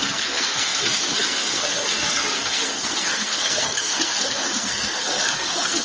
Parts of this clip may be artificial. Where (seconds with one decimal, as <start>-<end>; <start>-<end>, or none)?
0.0-5.8